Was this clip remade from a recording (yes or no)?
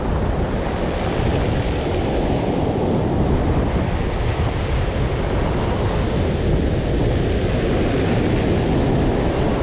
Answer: no